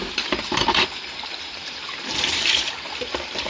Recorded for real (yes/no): no